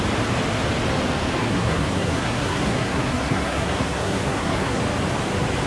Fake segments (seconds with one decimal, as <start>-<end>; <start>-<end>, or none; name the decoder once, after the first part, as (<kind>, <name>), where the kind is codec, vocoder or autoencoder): 1.4-4.8 (codec, SNAC)